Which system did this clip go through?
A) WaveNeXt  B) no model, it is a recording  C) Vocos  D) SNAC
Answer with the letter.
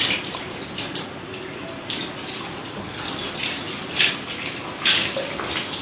B